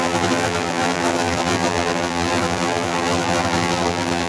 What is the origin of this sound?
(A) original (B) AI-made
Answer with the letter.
B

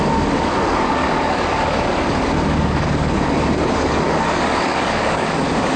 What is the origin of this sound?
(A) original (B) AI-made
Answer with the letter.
B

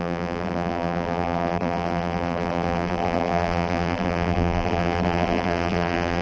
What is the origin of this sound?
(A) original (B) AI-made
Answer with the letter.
B